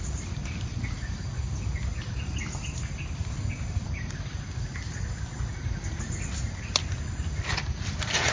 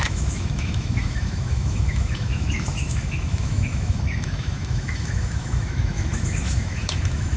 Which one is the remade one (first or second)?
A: second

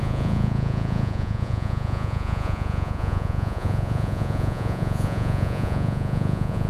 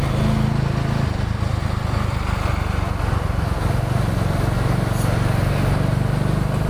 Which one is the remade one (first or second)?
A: first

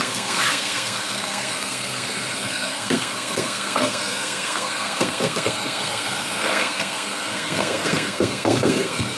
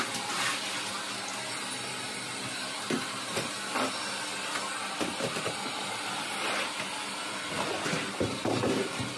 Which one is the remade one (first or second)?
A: first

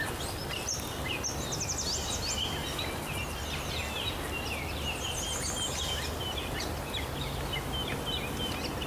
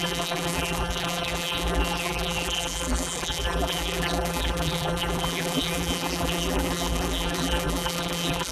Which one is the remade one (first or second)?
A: second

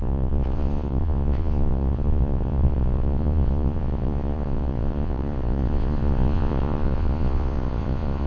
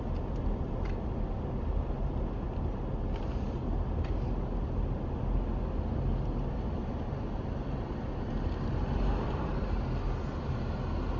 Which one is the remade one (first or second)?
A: first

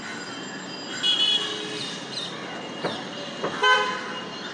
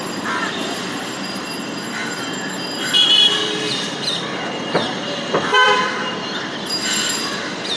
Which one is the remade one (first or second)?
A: second